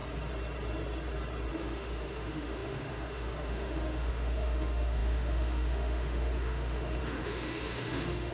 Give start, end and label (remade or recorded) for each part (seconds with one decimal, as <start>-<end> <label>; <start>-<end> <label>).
0.0-1.5 recorded; 1.5-8.3 remade